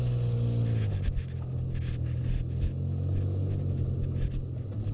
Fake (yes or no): no